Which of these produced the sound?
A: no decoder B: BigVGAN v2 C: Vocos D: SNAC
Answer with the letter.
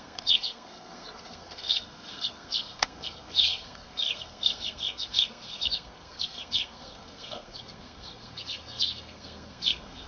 D